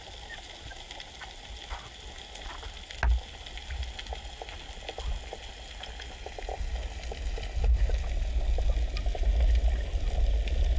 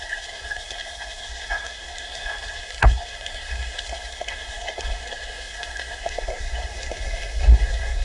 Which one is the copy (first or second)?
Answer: second